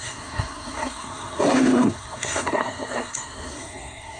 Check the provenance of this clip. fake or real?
fake